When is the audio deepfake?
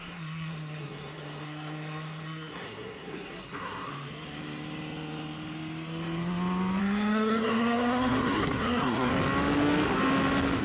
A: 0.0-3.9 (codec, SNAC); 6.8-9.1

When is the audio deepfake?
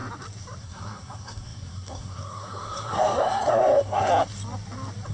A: 0.6-4.1 (codec, SNAC)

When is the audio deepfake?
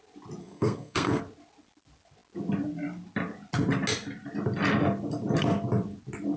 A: 0.4-1.2 (codec, SNAC)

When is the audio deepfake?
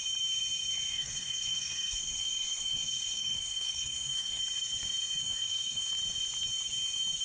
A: 0.9-4.4 (codec, SNAC); 5.2-5.9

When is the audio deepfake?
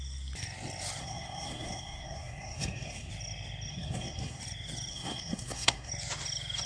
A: 1.0-3.1 (codec, SNAC); 3.7-4.4; 4.9-5.9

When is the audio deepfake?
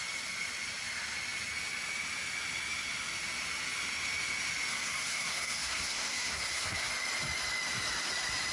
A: 4.7-6.9 (codec, SNAC)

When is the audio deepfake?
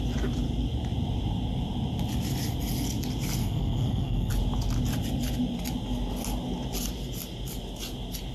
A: 3.4-4.3 (codec, SNAC)